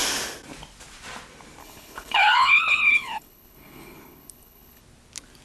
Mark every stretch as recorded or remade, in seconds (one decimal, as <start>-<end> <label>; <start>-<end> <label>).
0.0-1.6 recorded; 1.6-4.8 remade; 4.8-5.4 recorded